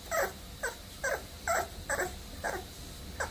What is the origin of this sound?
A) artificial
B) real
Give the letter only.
A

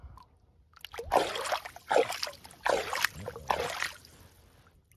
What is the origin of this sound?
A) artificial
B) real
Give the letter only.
B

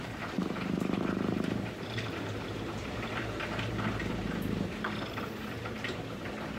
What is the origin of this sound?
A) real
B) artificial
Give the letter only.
B